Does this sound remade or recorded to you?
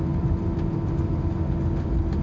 recorded